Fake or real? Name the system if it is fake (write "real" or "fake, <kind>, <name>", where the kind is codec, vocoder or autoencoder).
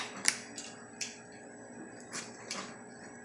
real